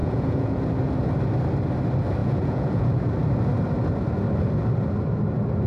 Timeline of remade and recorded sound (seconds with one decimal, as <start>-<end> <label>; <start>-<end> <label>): 0.0-0.6 remade; 0.6-2.2 recorded; 2.2-2.9 remade; 2.9-5.7 recorded